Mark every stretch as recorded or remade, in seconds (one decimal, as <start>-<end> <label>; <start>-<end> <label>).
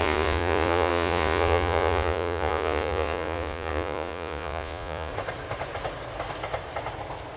0.0-5.1 remade; 5.1-7.4 recorded